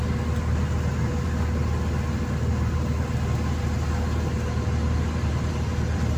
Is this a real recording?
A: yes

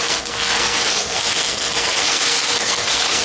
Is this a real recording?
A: no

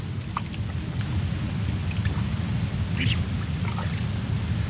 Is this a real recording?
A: yes